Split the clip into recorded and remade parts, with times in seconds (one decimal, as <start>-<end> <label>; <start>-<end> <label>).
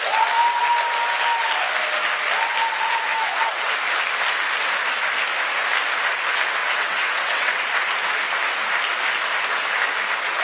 0.0-3.1 recorded; 3.1-3.7 remade; 3.7-6.6 recorded; 6.6-7.6 remade; 7.6-10.4 recorded